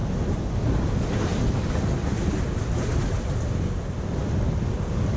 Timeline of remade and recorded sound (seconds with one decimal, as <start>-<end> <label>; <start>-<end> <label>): 0.0-5.2 recorded